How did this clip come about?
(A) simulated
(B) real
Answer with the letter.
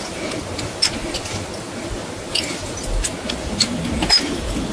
B